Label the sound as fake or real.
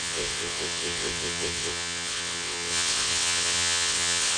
fake